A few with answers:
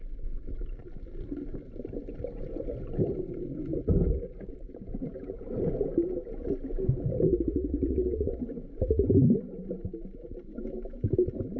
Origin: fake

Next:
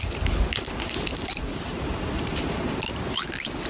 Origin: real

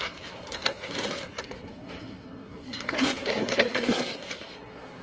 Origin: fake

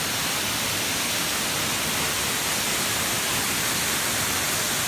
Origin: real